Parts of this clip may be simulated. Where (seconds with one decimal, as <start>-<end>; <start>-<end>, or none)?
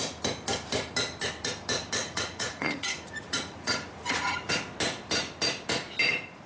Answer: 2.0-4.5